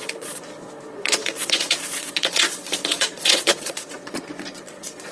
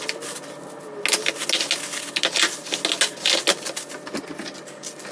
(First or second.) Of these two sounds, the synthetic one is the first